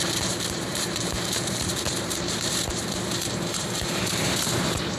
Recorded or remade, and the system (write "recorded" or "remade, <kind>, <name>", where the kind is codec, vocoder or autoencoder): remade, vocoder, BigVGAN v2